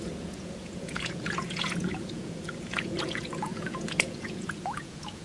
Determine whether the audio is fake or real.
fake